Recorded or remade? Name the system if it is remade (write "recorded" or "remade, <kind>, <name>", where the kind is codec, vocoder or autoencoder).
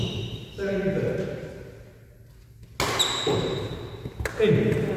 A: recorded